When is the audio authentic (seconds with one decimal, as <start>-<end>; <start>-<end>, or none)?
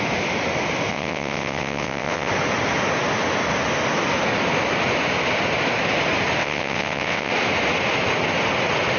0.0-0.9; 2.3-6.4; 7.3-9.0